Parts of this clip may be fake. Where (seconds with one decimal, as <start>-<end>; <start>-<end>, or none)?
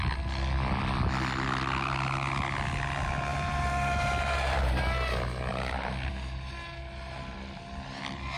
3.3-4.8